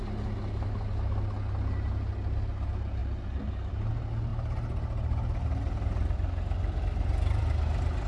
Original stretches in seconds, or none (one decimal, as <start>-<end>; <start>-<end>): 0.0-8.1